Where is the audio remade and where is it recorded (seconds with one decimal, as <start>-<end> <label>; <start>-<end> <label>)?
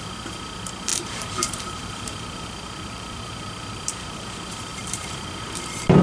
0.0-0.9 recorded; 0.9-3.5 remade; 3.5-4.7 recorded; 4.7-5.4 remade; 5.4-6.0 recorded